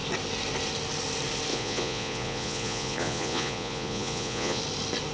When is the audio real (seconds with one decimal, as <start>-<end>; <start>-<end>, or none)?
0.0-1.5; 4.6-5.1

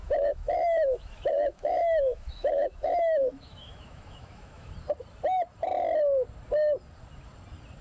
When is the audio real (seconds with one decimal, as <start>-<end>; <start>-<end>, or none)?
4.7-7.8